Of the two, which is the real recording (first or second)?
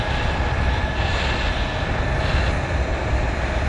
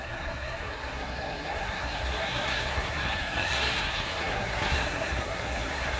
first